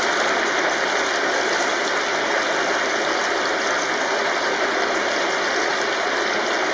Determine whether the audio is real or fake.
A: real